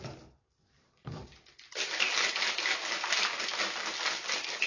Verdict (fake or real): real